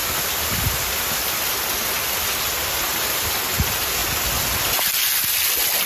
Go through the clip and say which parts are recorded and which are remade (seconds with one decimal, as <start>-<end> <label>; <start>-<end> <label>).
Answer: 0.0-2.4 remade; 2.4-2.9 recorded; 2.9-3.4 remade; 3.4-5.9 recorded